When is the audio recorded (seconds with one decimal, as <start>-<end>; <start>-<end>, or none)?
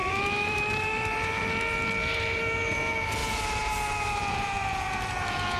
1.5-2.3; 2.8-3.2; 5.0-5.6